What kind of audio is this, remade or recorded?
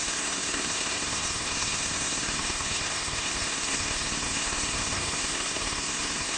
remade